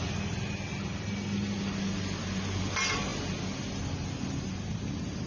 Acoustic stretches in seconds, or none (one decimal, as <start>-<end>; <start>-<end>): 0.0-5.3